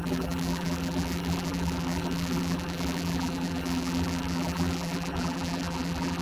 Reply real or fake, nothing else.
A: fake